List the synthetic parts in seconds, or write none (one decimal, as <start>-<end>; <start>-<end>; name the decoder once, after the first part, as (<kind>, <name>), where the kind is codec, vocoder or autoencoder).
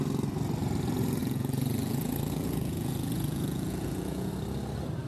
1.2-4.3 (vocoder, Vocos)